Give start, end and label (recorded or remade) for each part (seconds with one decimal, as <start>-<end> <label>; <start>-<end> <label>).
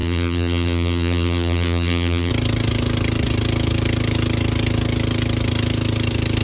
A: 0.0-2.3 remade; 2.3-6.4 recorded